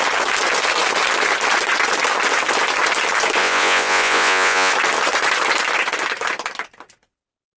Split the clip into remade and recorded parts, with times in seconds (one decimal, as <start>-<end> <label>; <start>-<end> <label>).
0.0-3.4 recorded; 3.4-4.7 remade; 4.7-7.6 recorded